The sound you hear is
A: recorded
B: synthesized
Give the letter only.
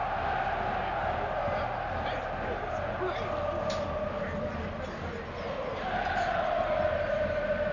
A